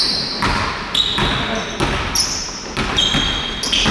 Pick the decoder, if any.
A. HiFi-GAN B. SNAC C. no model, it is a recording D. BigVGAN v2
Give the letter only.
C